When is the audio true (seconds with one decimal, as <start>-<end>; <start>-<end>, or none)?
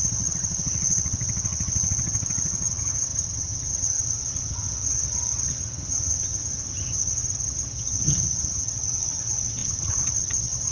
none